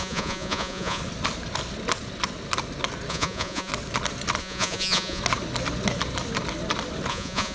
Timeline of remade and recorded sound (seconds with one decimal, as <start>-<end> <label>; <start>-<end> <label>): 0.0-1.0 remade; 1.0-3.1 recorded; 3.1-3.7 remade; 3.7-4.4 recorded; 4.4-5.2 remade; 5.2-7.1 recorded; 7.1-7.5 remade